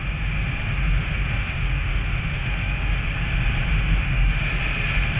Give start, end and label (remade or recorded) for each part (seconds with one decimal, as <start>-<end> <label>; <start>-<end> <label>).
0.0-0.6 recorded; 0.6-3.0 remade; 3.0-3.7 recorded; 3.7-4.5 remade; 4.5-5.2 recorded

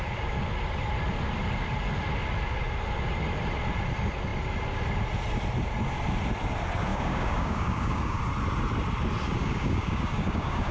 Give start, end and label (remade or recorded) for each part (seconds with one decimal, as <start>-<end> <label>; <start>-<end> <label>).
0.0-6.9 recorded; 6.9-8.2 remade; 8.2-9.4 recorded; 9.4-10.7 remade

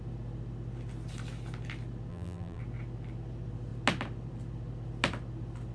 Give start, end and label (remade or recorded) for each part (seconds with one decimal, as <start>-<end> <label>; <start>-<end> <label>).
0.0-2.1 recorded; 2.1-2.6 remade; 2.6-5.7 recorded

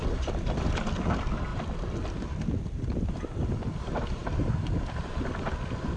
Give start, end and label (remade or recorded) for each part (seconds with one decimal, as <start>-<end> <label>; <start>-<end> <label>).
0.0-6.0 recorded

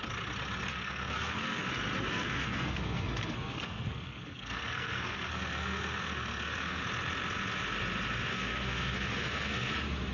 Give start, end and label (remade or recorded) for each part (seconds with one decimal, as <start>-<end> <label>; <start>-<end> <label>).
0.0-0.7 recorded; 0.7-1.7 remade; 1.7-2.1 recorded; 2.1-6.8 remade; 6.8-8.3 recorded; 8.3-9.7 remade; 9.7-10.1 recorded

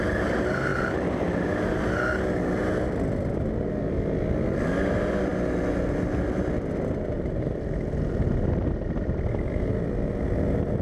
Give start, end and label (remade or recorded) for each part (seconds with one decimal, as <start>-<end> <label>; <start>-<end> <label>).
0.0-10.8 recorded

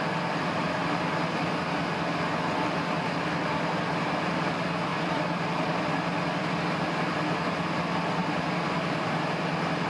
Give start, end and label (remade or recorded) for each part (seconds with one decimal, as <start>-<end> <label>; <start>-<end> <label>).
0.0-8.2 recorded; 8.2-9.2 remade; 9.2-9.9 recorded